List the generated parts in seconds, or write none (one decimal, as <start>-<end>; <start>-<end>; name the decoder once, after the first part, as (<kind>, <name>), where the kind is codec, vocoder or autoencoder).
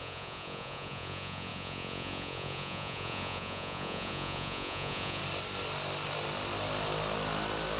0.0-5.2 (vocoder, Vocos)